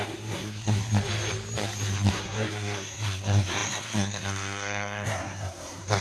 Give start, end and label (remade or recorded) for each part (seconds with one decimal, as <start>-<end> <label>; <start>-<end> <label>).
0.0-0.8 remade; 0.8-2.1 recorded; 2.1-6.0 remade